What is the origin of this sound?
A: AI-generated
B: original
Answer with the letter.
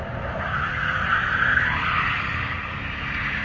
B